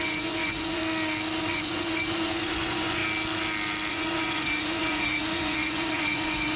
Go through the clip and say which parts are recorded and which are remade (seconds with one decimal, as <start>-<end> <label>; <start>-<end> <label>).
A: 0.0-0.8 remade; 0.8-1.4 recorded; 1.4-3.0 remade; 3.0-3.9 recorded; 3.9-6.6 remade